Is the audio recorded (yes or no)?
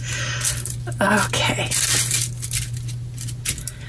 yes